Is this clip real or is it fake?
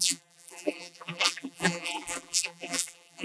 fake